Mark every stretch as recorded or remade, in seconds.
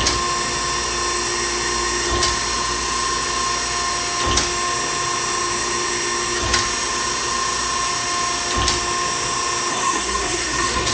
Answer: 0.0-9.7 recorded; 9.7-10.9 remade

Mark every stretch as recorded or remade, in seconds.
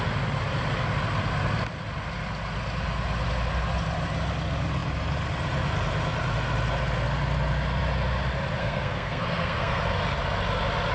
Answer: 0.0-8.6 recorded; 8.6-9.8 remade; 9.8-10.9 recorded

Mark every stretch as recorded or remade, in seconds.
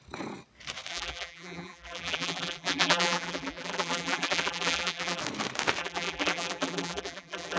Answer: 0.0-0.9 recorded; 0.9-5.2 remade; 5.2-5.8 recorded; 5.8-7.6 remade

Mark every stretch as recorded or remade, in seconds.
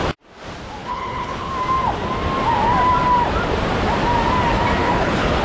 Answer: 0.0-0.8 recorded; 0.8-1.5 remade; 1.5-4.8 recorded; 4.8-5.4 remade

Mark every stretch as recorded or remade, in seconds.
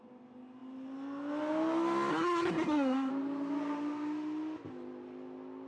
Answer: 0.0-2.1 recorded; 2.1-3.1 remade; 3.1-5.7 recorded